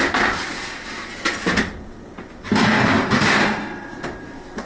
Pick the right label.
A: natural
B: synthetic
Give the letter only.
A